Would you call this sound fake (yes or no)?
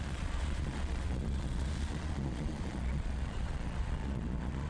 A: yes